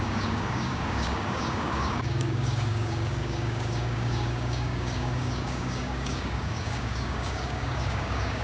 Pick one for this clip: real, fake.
fake